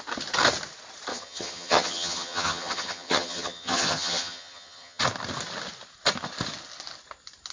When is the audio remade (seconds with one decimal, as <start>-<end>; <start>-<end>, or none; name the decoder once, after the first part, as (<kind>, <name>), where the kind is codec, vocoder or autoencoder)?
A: 1.1-5.0 (vocoder, HiFi-GAN)